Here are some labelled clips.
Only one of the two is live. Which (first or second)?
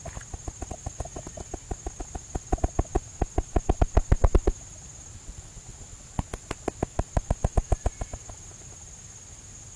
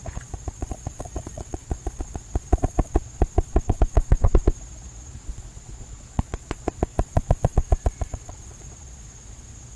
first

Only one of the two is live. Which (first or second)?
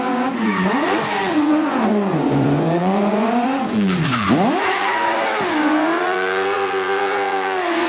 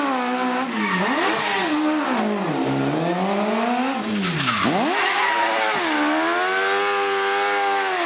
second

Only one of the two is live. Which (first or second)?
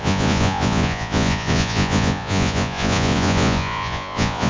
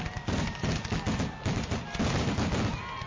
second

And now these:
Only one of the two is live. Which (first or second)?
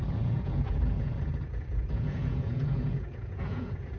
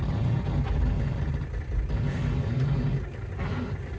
second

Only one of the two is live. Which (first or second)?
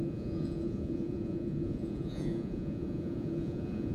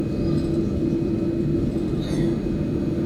second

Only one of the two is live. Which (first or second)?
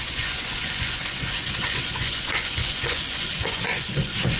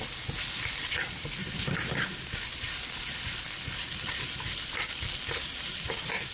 second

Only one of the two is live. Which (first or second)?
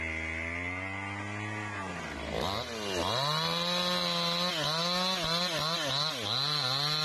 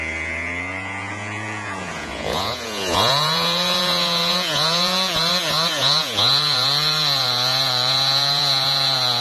first